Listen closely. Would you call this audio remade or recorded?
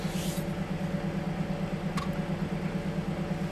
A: recorded